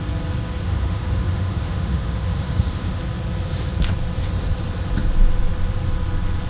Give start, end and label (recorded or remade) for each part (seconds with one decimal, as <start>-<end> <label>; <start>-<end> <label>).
0.0-0.6 recorded; 0.6-3.0 remade; 3.0-6.5 recorded